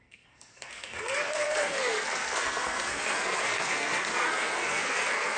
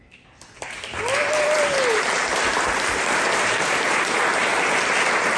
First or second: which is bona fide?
second